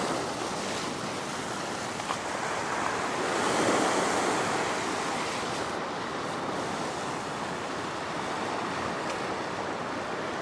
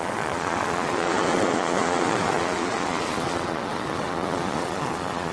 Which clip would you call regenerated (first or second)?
second